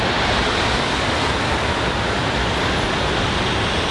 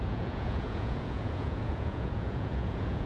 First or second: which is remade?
second